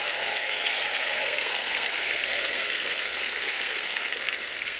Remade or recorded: remade